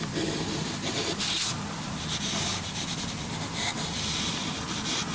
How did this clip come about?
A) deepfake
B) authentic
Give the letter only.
B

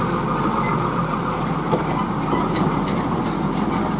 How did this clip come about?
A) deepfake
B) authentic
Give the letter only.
B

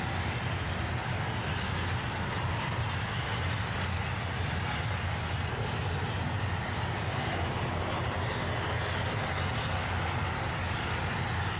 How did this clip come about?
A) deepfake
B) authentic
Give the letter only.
B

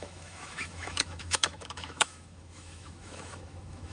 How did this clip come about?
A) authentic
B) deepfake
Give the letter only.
B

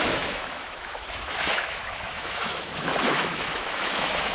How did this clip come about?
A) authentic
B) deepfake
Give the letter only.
B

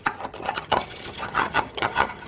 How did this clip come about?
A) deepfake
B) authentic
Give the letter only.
A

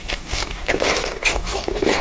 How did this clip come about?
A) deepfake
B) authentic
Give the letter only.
A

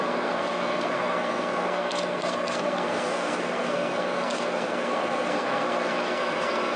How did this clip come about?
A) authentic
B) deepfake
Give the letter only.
B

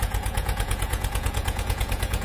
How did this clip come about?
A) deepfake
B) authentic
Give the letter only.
A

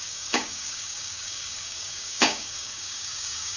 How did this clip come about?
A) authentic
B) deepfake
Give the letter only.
B